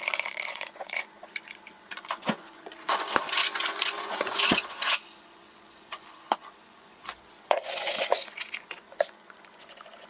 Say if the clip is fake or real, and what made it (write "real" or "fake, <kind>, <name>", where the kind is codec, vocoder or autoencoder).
fake, vocoder, Vocos